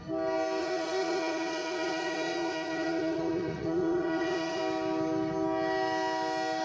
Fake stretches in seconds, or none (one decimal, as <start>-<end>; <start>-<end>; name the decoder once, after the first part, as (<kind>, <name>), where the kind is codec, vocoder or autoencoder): 0.6-4.6 (vocoder, Vocos)